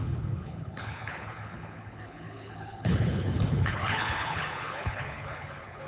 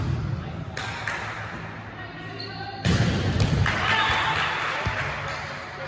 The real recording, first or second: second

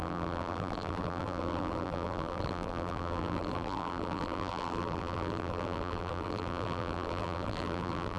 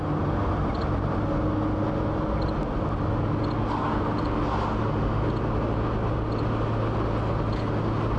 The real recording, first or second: second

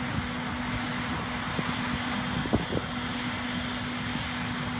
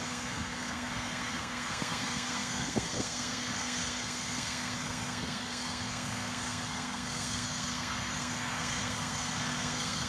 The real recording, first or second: first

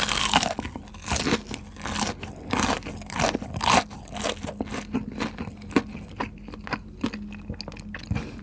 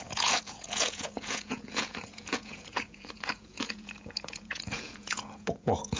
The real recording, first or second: first